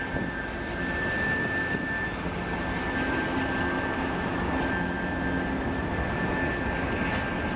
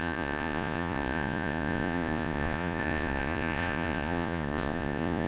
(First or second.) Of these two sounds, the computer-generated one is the second